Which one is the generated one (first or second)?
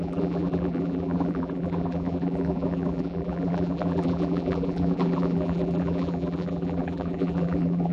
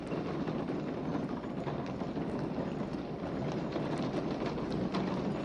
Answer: first